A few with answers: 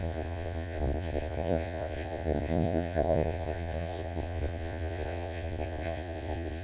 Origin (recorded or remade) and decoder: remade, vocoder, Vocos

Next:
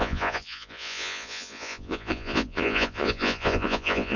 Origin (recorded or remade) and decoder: remade, vocoder, Vocos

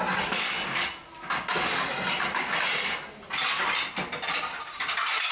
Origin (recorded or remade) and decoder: recorded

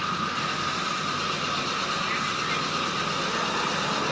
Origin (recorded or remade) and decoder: recorded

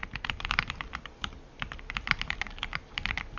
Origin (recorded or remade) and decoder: recorded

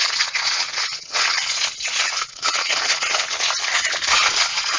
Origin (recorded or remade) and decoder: remade, vocoder, Vocos